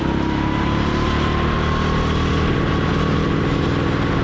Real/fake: real